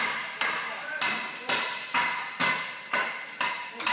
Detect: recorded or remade recorded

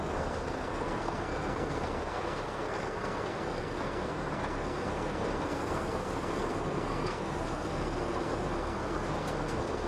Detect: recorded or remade remade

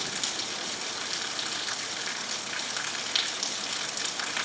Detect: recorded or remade recorded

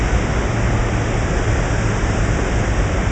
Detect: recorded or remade recorded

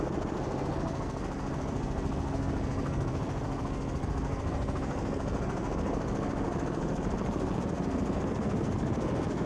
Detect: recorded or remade remade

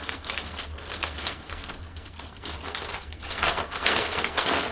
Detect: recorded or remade remade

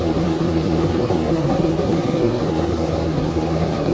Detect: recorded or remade remade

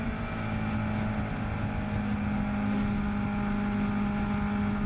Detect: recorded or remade recorded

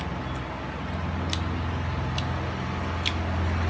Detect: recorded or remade recorded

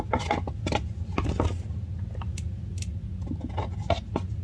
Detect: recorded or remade recorded